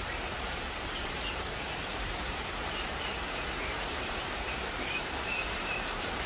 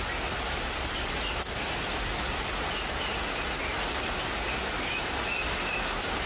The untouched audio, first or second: second